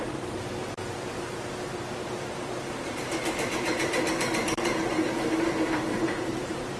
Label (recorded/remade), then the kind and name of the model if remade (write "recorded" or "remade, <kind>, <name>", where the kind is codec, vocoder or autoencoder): remade, vocoder, BigVGAN v2